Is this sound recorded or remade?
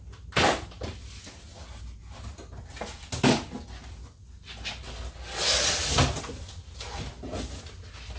recorded